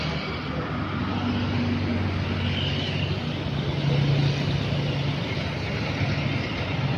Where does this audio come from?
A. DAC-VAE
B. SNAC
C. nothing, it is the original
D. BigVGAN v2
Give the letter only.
C